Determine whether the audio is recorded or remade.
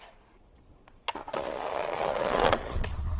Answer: remade